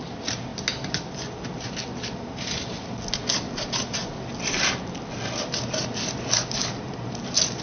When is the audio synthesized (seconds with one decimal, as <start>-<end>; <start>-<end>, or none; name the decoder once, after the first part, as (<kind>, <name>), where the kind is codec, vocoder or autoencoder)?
none